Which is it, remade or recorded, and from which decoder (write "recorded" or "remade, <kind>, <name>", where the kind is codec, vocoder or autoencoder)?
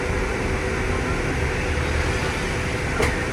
recorded